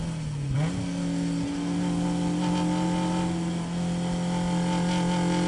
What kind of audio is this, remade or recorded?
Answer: recorded